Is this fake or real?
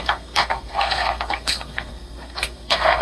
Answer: fake